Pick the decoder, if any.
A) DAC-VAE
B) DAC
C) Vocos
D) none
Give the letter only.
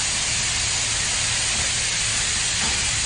D